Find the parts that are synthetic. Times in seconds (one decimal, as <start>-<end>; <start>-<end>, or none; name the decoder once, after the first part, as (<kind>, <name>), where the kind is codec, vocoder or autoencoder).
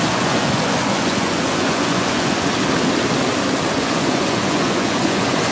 0.0-2.5 (vocoder, Vocos); 3.7-5.5